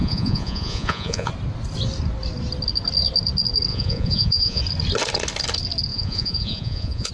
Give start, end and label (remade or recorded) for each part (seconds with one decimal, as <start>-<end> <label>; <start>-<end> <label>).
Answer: 0.0-1.3 remade; 1.3-3.7 recorded; 3.7-4.6 remade; 4.6-5.9 recorded; 5.9-7.1 remade